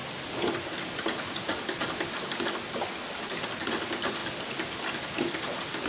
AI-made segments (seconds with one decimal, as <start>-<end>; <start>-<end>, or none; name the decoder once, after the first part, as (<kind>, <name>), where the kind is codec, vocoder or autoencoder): none